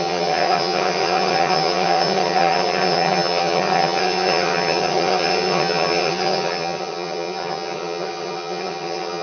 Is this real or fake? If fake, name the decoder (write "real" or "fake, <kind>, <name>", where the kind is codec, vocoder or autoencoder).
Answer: fake, vocoder, HiFi-GAN